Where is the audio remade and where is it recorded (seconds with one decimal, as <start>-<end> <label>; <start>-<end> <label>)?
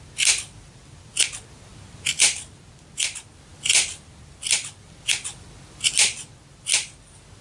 0.0-7.4 recorded